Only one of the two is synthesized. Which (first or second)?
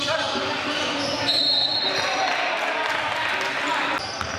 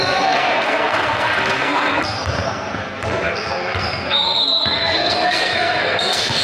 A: second